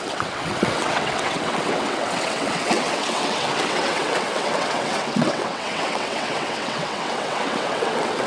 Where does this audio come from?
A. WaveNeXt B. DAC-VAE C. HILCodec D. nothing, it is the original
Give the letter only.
A